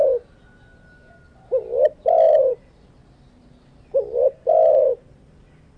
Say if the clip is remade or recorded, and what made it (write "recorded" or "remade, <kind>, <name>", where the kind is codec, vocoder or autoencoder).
recorded